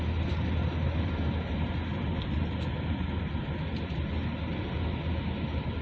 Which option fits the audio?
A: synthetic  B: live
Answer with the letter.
B